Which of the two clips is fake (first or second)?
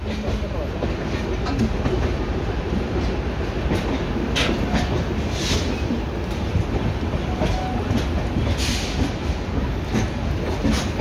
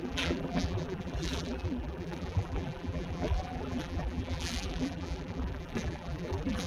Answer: second